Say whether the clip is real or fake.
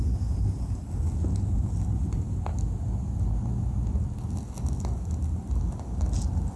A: real